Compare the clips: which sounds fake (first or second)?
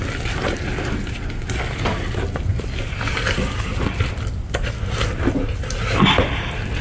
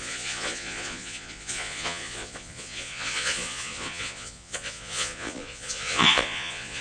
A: second